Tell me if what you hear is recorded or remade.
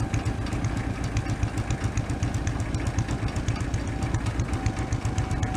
recorded